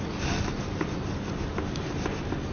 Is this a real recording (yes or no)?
yes